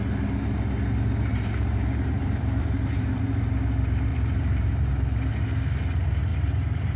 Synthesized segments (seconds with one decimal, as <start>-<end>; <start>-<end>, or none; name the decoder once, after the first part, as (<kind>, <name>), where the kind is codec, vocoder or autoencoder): 1.3-3.2 (vocoder, BigVGAN v2); 4.1-4.9